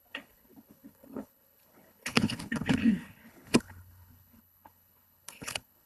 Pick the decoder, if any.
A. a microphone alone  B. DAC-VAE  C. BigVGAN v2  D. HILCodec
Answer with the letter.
D